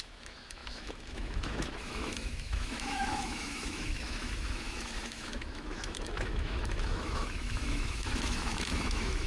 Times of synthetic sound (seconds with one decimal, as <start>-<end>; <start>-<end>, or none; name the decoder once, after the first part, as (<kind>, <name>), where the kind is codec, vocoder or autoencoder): 0.0-9.3 (autoencoder, DAC-VAE)